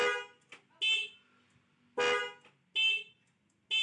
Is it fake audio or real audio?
real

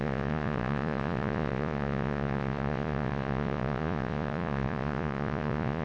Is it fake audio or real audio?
fake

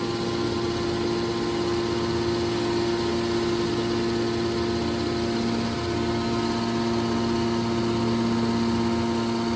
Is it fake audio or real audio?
real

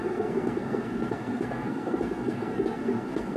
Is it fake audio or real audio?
fake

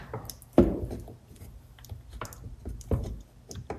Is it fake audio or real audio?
real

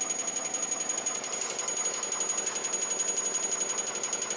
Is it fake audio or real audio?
real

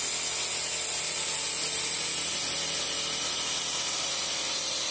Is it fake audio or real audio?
real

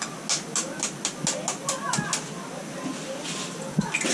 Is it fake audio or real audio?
real